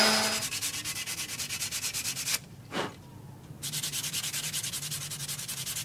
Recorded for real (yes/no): yes